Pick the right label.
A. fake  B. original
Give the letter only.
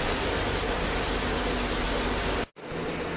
B